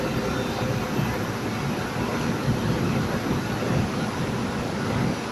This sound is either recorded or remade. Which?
recorded